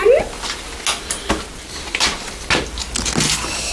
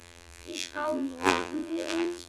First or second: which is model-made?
second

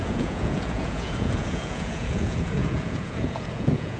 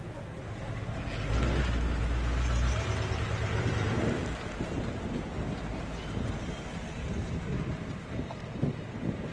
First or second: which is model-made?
first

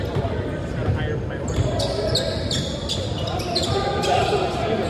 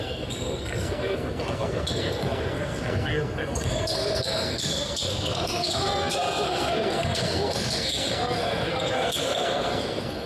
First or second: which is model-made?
second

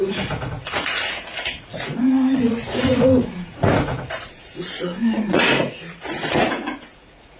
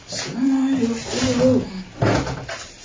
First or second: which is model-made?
first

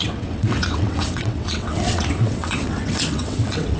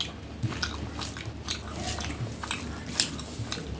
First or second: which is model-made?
first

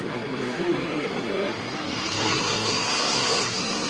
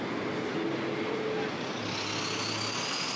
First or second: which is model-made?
first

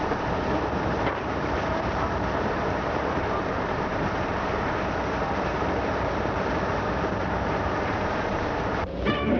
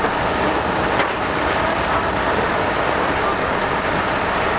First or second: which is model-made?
first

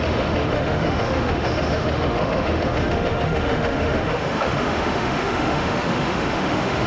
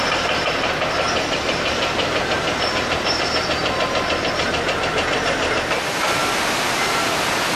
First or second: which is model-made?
first